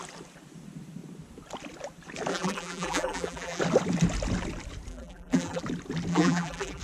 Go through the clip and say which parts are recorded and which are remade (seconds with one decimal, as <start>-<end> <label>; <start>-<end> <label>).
0.0-2.3 recorded; 2.3-3.6 remade; 3.6-4.9 recorded; 4.9-5.6 remade; 5.6-6.1 recorded; 6.1-6.8 remade